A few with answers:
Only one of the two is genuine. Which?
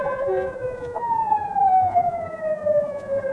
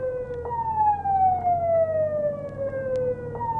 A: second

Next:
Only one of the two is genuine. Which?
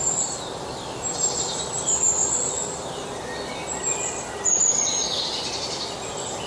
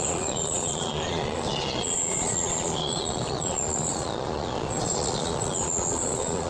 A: first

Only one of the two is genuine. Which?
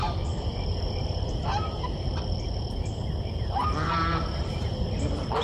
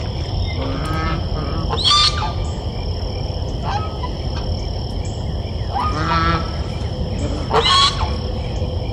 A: second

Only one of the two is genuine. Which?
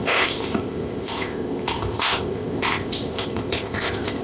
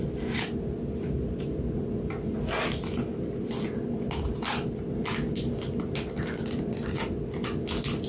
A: second